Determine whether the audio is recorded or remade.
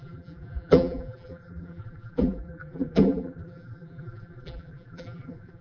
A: remade